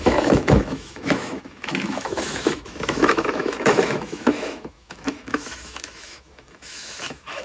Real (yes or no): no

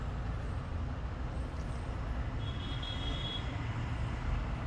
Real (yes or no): yes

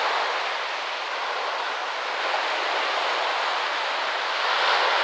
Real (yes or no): yes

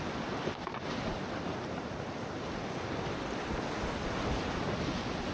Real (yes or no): yes